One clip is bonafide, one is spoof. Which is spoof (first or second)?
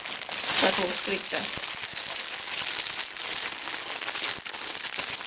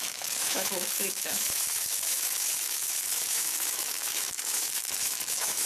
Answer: second